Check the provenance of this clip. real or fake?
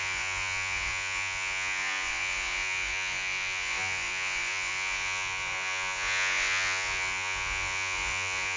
fake